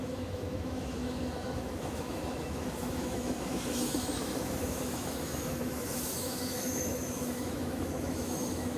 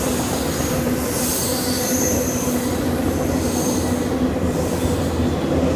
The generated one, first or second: first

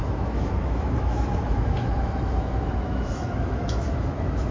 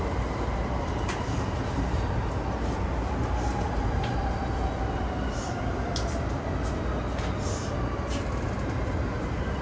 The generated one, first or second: first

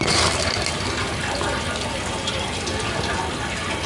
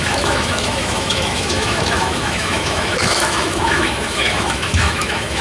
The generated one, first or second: second